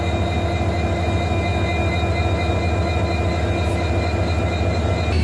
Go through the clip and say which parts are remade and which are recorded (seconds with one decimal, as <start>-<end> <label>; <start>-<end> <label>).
0.0-5.2 recorded